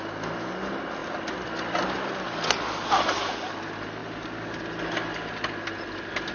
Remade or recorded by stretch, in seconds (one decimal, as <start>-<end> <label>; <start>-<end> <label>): 0.0-6.3 recorded